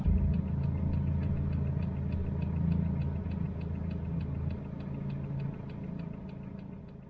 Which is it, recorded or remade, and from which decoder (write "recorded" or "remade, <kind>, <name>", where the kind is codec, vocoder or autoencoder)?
recorded